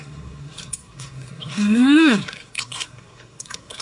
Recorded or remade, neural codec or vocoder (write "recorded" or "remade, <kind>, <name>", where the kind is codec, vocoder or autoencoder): remade, codec, SNAC